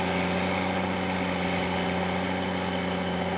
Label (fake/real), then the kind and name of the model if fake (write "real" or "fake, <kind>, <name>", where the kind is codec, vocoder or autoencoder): real